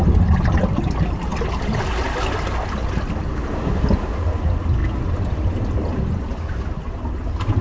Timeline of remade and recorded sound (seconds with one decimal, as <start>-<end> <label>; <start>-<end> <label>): 0.0-7.6 recorded